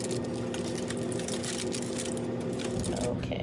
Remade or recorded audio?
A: recorded